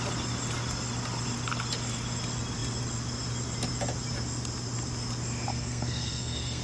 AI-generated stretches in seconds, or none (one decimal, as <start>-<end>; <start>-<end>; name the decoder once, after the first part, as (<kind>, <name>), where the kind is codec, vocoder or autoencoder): 5.5-6.6 (codec, SNAC)